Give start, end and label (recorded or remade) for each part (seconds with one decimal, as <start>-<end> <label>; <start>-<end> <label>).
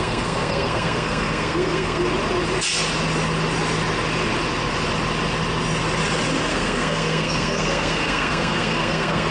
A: 0.0-2.0 remade; 2.0-6.5 recorded; 6.5-9.3 remade